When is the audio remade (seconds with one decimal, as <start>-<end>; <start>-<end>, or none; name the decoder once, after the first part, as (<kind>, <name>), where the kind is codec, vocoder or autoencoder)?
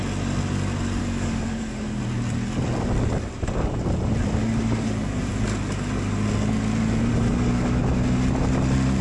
1.0-2.0 (codec, DAC); 4.4-5.3; 7.1-7.8